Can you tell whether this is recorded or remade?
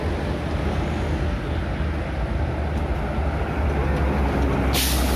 recorded